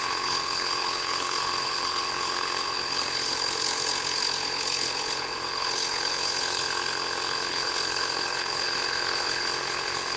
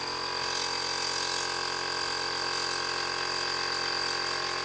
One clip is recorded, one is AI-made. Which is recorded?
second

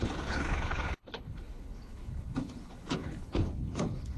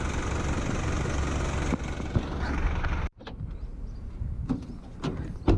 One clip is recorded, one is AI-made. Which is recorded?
second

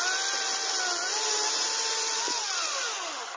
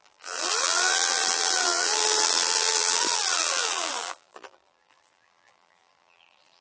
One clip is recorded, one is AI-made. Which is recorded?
first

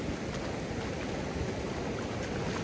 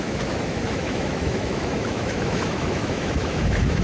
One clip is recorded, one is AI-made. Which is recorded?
first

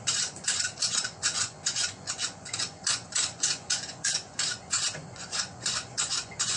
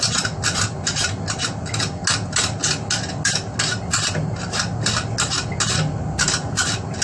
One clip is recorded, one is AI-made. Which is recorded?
second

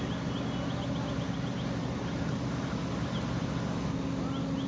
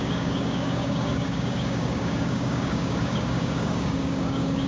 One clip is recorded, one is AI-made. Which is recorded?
first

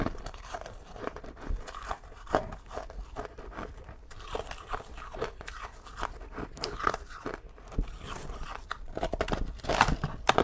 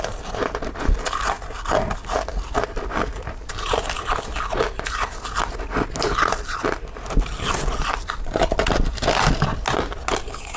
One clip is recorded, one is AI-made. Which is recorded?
second